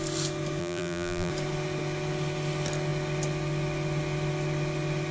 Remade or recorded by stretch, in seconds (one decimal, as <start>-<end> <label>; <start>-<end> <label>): 0.0-0.6 recorded; 0.6-1.3 remade; 1.3-5.1 recorded